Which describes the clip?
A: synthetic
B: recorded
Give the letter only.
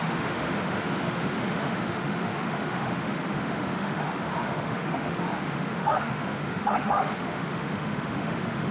A